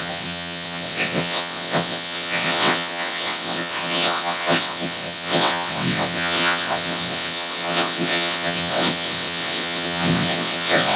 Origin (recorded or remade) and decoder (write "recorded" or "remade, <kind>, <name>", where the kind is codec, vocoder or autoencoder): remade, vocoder, WaveNeXt